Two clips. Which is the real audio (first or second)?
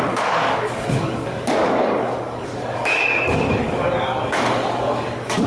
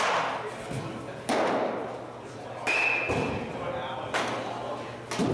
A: second